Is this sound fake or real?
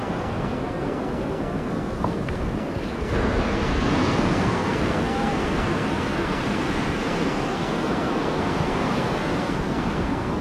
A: fake